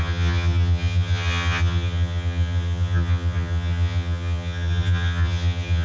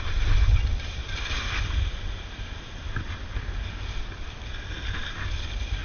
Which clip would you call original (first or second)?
second